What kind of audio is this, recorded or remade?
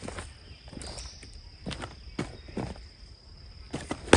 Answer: recorded